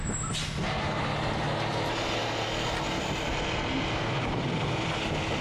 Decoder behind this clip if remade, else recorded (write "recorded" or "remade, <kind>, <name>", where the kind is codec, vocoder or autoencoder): recorded